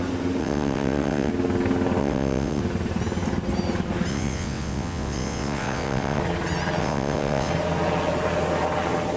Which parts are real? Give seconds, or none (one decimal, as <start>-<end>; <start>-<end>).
0.0-0.4; 1.3-2.0; 2.6-4.1; 6.2-6.8; 7.5-9.2